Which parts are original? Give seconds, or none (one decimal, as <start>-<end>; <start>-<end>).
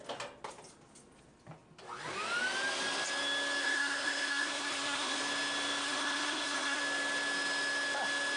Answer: 0.0-3.6; 5.2-5.8; 6.8-8.4